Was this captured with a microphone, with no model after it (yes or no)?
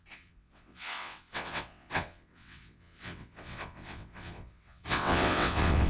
no